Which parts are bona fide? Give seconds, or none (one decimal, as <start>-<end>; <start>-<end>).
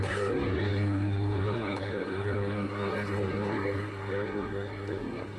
none